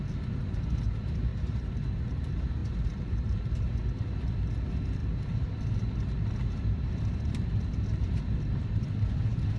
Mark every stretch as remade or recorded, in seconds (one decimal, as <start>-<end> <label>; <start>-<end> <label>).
0.0-1.3 recorded; 1.3-2.2 remade; 2.2-2.6 recorded; 2.6-3.5 remade; 3.5-9.6 recorded